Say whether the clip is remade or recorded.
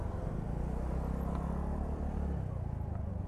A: recorded